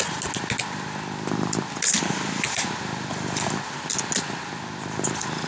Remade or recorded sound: recorded